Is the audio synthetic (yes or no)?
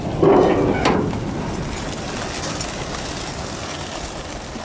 no